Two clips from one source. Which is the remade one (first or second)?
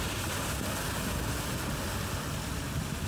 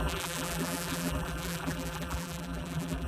second